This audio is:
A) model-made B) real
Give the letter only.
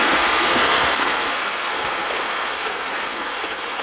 A